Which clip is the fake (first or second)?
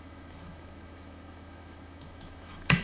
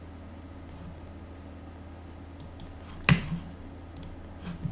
first